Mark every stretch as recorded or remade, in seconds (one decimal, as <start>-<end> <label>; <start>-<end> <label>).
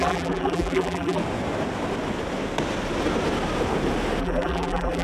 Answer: 0.0-1.2 remade; 1.2-4.2 recorded; 4.2-5.0 remade